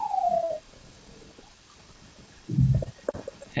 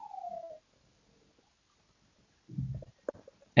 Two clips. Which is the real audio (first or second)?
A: second